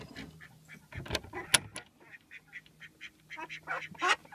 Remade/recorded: recorded